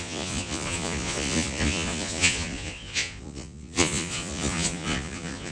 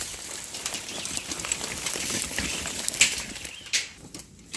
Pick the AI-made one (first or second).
first